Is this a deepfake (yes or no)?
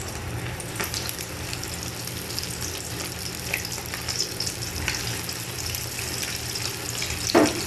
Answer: yes